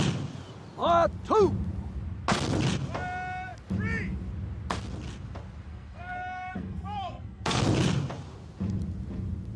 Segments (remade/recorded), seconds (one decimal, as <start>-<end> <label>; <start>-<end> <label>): 0.0-5.7 recorded; 5.7-7.6 remade; 7.6-9.6 recorded